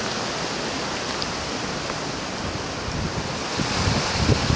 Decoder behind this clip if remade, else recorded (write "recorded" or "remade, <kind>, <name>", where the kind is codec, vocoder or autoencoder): recorded